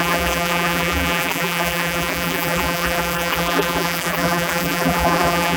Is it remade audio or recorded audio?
remade